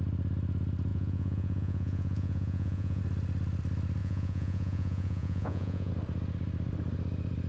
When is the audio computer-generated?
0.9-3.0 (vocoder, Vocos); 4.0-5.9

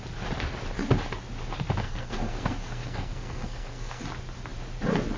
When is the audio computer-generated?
1.8-4.0 (codec, SNAC)

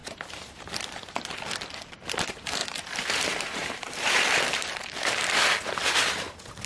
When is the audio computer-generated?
2.6-4.6 (vocoder, BigVGAN v2)

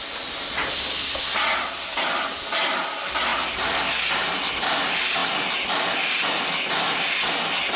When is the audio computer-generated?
3.3-3.8 (vocoder, BigVGAN v2)